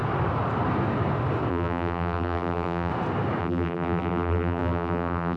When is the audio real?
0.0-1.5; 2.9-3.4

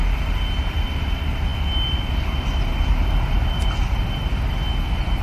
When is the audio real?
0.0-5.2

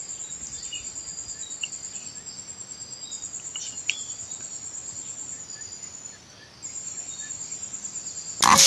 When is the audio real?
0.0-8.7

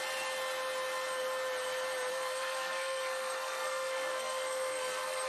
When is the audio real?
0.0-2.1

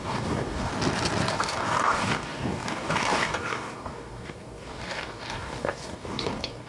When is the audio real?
0.7-1.3